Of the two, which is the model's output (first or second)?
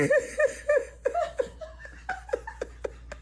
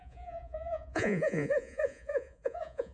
second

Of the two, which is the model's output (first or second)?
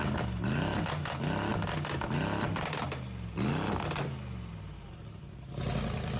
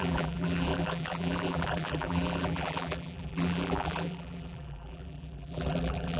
second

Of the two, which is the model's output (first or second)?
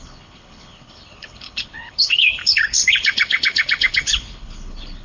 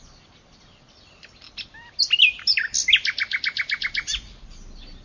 first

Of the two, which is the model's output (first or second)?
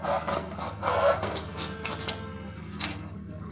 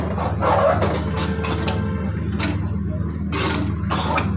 first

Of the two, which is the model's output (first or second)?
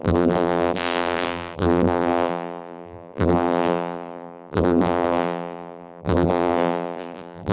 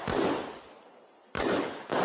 first